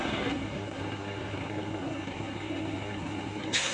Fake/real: fake